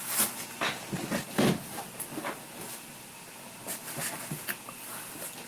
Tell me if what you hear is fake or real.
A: real